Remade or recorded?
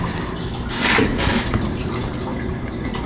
recorded